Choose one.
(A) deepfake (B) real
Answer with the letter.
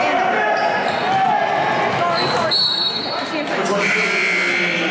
B